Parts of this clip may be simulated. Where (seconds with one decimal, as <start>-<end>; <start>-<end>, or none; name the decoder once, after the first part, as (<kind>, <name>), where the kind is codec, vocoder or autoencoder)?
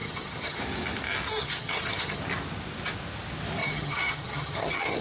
0.0-0.6 (vocoder, HiFi-GAN); 1.4-2.2; 3.6-5.0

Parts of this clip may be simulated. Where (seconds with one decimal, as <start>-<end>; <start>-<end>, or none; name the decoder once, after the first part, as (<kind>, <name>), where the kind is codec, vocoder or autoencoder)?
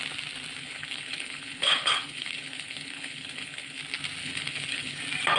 0.6-3.8 (codec, HILCodec); 4.2-5.0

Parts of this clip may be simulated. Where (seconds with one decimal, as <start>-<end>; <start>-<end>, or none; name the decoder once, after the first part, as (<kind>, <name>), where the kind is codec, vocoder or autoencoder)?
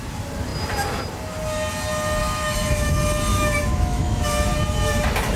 2.2-2.9 (autoencoder, DAC-VAE); 3.3-4.2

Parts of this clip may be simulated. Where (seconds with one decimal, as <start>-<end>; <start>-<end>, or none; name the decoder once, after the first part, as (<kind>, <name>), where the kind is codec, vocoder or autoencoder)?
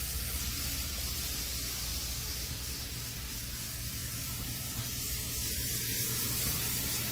4.0-7.1 (vocoder, BigVGAN v2)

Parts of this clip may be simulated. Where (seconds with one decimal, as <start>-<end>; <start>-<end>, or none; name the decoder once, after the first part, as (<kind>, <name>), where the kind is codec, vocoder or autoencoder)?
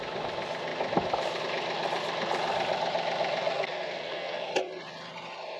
3.4-4.5 (codec, SNAC)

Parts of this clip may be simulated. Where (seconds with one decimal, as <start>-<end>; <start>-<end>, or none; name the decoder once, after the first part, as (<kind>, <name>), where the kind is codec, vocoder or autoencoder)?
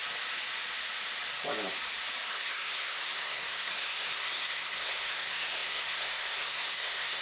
2.3-7.2 (codec, SNAC)